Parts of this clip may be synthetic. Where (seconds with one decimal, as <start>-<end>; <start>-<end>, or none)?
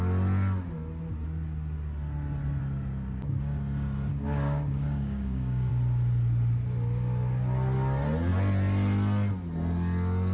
4.1-5.7